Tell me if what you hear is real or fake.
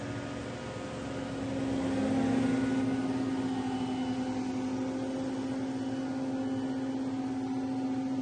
real